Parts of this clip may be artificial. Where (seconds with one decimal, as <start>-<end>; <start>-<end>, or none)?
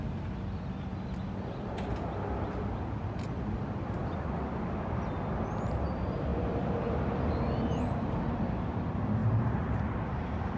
6.3-8.3; 9.2-10.6